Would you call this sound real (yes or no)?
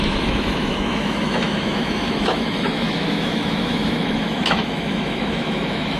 no